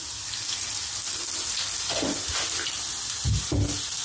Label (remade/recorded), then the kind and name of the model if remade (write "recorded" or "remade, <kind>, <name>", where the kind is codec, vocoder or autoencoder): recorded